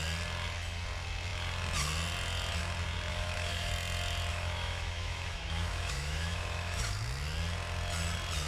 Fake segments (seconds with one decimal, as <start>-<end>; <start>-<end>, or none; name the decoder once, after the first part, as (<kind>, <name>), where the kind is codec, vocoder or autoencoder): 3.1-3.7 (autoencoder, DAC-VAE); 4.3-6.8